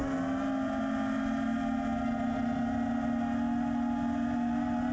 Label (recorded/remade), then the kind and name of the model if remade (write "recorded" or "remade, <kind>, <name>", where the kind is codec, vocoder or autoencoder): recorded